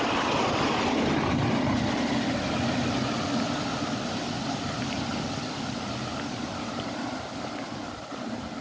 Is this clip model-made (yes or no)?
no